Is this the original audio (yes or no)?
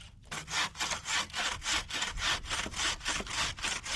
yes